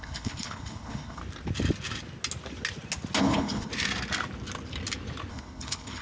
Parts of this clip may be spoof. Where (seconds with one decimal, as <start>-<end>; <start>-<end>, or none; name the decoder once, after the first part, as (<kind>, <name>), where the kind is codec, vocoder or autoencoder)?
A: 0.0-1.2 (codec, HILCodec); 3.2-3.7; 5.3-6.0